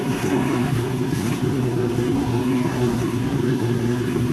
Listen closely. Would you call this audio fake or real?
fake